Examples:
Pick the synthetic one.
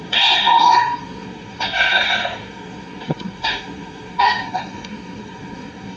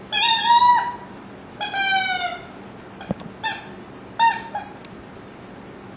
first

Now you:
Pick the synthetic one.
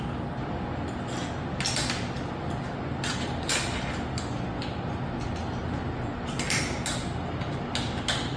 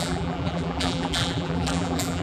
second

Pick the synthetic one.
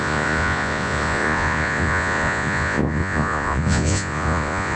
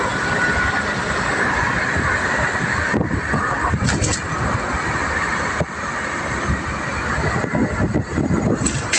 first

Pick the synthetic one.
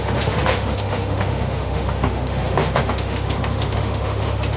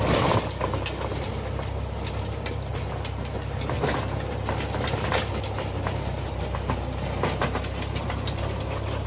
first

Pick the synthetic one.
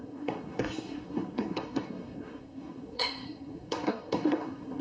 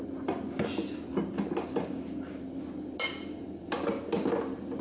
first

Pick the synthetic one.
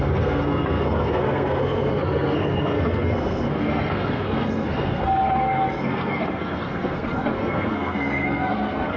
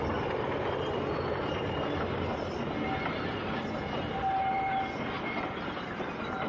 first